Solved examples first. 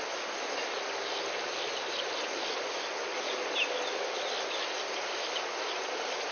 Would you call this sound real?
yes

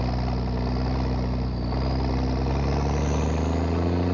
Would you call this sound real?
yes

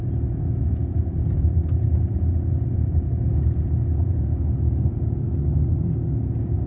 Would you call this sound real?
yes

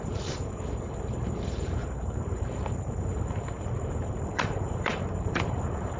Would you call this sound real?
no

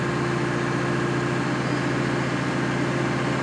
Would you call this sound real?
yes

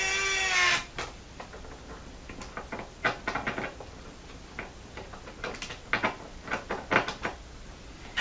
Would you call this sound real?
yes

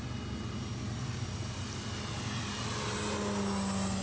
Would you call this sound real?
yes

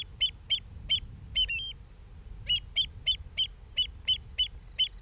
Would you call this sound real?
yes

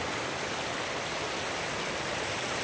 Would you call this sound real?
yes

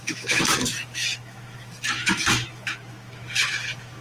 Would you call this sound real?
no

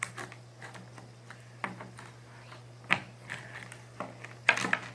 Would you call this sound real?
yes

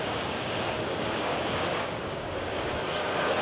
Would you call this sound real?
no